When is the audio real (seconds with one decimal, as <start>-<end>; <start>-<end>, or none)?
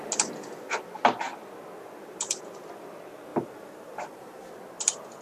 0.0-3.3; 4.5-5.2